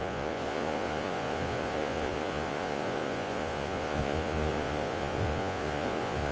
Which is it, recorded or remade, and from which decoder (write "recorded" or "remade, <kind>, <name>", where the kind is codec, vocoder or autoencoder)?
remade, vocoder, Vocos